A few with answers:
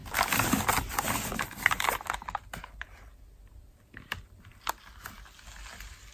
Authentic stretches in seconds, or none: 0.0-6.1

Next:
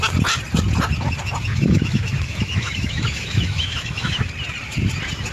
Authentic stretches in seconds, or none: 0.0-1.5; 4.3-5.3

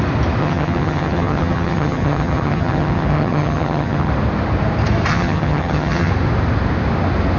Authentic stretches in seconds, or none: 0.0-0.4; 4.1-5.1; 6.1-7.4

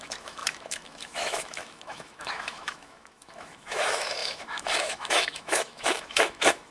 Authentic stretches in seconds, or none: none